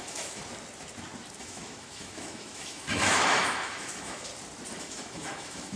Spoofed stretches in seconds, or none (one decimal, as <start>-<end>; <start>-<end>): 0.0-0.4; 1.4-4.3; 4.8-5.8